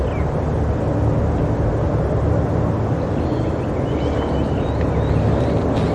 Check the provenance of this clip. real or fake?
real